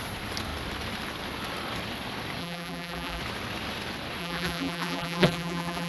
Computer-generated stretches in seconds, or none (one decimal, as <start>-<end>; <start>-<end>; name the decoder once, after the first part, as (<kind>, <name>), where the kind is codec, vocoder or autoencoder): 2.4-3.2 (vocoder, BigVGAN v2); 4.2-5.9